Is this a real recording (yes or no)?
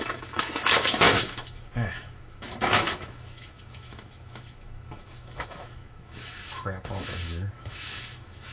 no